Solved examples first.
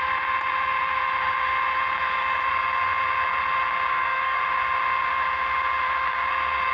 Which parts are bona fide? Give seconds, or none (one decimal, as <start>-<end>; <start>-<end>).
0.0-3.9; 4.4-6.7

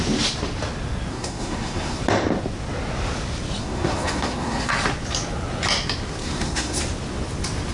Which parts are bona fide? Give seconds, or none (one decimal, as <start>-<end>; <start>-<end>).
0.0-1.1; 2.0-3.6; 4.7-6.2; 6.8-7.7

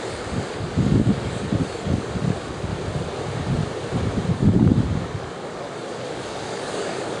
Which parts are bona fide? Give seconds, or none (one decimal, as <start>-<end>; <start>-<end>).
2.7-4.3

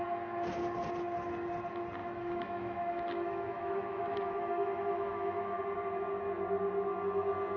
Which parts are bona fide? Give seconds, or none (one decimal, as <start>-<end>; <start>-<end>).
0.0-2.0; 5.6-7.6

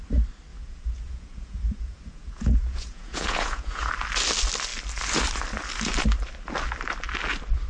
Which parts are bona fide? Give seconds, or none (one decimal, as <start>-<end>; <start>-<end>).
0.0-0.5; 3.9-7.7